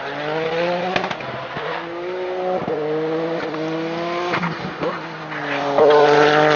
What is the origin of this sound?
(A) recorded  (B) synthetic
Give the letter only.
A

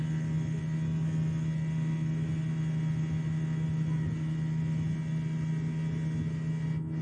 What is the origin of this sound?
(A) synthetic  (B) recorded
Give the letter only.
B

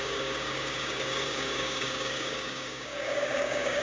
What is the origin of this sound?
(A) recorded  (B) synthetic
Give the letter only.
B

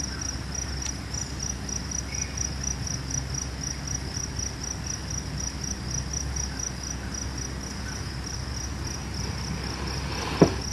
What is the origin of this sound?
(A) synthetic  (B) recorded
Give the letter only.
B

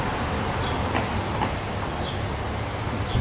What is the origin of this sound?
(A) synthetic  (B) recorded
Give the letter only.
B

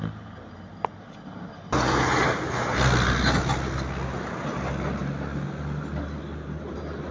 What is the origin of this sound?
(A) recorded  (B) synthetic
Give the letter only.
A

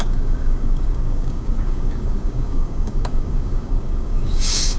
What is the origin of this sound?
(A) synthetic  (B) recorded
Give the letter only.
A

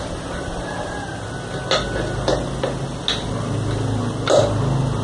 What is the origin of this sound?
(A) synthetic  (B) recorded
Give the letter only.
B